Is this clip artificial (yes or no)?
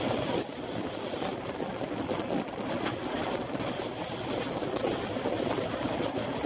no